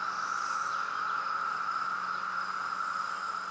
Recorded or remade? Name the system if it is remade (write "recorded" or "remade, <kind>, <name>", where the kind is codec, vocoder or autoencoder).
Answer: recorded